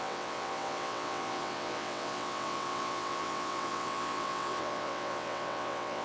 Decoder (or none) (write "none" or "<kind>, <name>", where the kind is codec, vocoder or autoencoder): vocoder, WaveNeXt